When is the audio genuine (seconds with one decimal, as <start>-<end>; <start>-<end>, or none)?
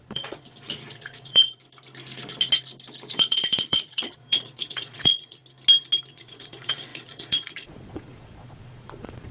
1.6-3.1; 5.4-6.1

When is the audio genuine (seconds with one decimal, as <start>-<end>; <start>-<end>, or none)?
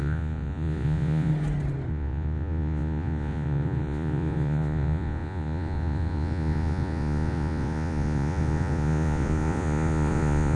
1.3-1.9